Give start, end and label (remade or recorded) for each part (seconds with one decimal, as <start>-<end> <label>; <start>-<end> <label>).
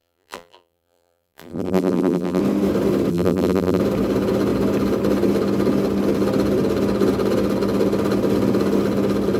0.0-2.4 remade; 2.4-3.1 recorded; 3.1-3.8 remade; 3.8-9.4 recorded